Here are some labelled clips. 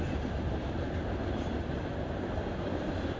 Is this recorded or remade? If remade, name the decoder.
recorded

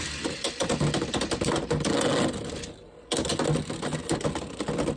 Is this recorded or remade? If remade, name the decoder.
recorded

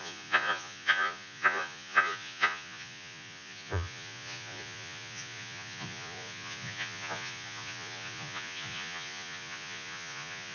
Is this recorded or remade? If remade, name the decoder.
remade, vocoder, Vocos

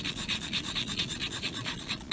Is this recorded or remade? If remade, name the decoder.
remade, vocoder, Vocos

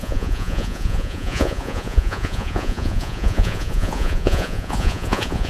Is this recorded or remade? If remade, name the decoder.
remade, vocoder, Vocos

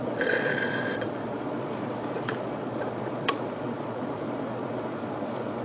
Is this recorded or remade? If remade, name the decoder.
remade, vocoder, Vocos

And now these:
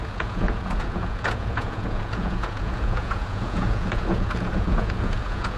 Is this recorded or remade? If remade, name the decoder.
remade, vocoder, Vocos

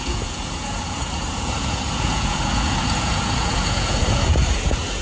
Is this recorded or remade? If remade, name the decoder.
remade, vocoder, Vocos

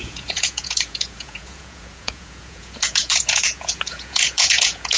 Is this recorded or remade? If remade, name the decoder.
remade, vocoder, Vocos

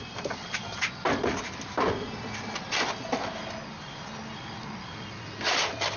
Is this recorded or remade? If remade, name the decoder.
recorded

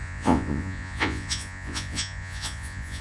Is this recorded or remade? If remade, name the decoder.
remade, vocoder, Vocos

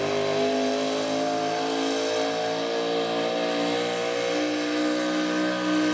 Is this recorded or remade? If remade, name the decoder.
recorded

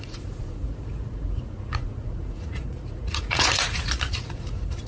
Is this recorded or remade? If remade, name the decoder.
remade, vocoder, Vocos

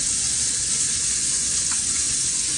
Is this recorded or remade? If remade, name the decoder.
remade, vocoder, Vocos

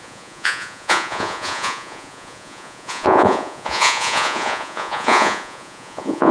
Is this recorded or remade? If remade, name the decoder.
remade, vocoder, Vocos